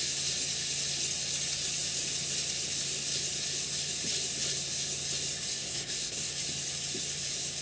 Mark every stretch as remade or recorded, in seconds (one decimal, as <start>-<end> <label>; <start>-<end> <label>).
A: 0.0-5.5 recorded; 5.5-6.3 remade; 6.3-7.6 recorded